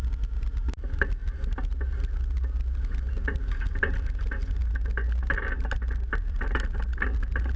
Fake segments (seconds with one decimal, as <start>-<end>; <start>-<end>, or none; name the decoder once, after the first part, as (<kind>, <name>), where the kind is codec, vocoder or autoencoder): none